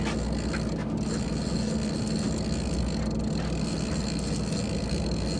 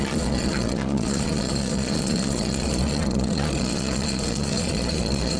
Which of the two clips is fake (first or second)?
second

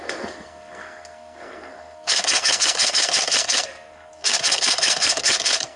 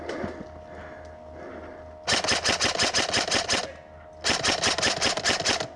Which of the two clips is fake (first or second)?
first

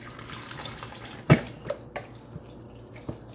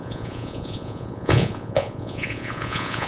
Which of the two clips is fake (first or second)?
second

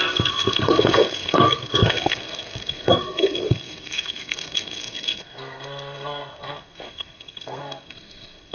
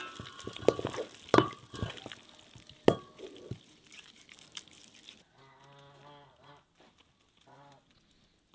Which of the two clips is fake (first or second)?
first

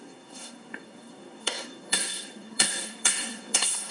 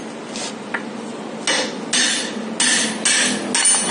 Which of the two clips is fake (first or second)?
first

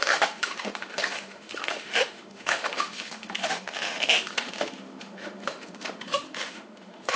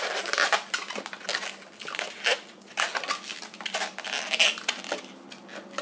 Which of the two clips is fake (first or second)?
first